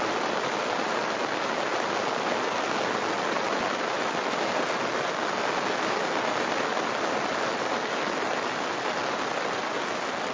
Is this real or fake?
real